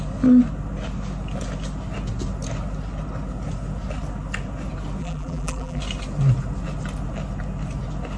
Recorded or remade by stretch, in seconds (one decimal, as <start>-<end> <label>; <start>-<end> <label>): 0.0-5.0 recorded; 5.0-5.8 remade; 5.8-8.2 recorded